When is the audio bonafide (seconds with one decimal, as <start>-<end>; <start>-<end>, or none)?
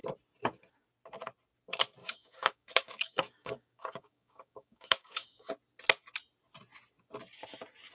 0.0-2.0; 5.5-7.9